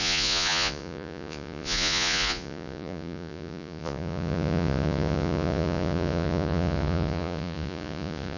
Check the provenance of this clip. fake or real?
fake